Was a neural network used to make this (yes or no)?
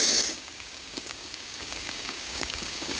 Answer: yes